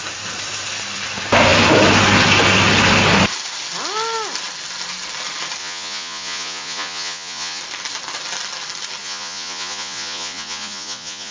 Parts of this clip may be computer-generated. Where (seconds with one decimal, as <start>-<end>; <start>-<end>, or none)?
5.6-7.6; 9.0-11.3